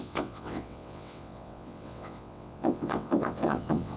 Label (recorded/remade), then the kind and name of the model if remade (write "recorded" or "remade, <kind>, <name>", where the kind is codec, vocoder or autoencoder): remade, vocoder, WaveNeXt